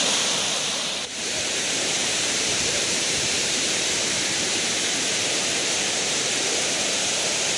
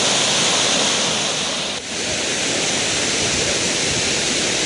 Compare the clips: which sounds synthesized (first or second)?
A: first